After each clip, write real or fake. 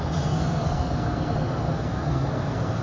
fake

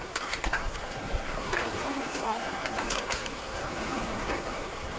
fake